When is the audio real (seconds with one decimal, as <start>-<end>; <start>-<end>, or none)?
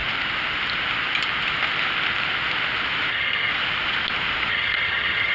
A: 0.0-3.1; 3.5-4.5